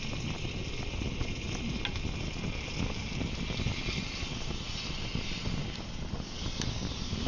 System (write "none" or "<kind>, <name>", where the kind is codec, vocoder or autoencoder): none